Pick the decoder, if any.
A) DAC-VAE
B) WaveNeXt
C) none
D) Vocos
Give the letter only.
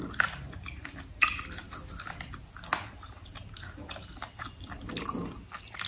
C